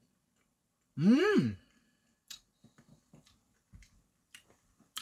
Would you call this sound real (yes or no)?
no